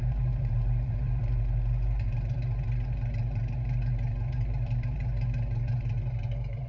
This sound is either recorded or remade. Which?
remade